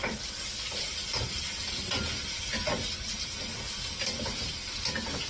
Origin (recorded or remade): recorded